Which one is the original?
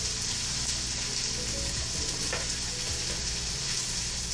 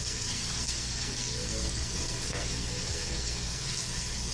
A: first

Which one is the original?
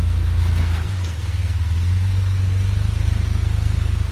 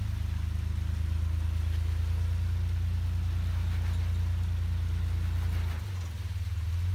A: second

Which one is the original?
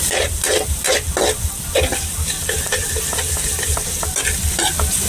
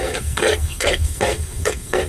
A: first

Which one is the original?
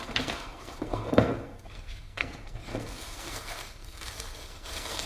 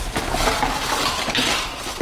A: second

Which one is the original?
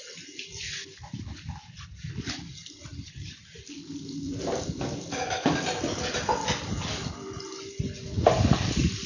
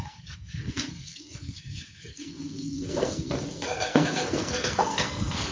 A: first